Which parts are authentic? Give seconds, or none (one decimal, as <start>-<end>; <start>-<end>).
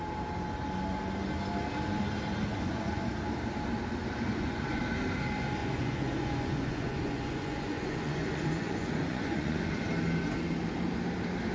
0.0-2.5; 3.1-4.3; 4.8-5.6; 9.6-11.5